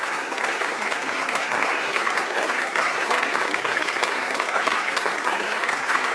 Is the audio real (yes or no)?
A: no